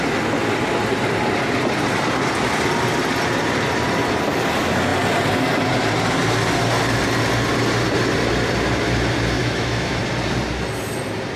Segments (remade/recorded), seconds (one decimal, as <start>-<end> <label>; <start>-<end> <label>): 0.0-9.4 recorded; 9.4-10.0 remade; 10.0-11.4 recorded